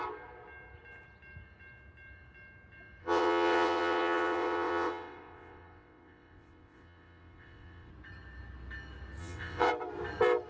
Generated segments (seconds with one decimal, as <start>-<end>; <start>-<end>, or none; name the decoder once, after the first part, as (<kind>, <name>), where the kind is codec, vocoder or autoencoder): 3.0-7.9 (vocoder, WaveNeXt); 9.2-9.7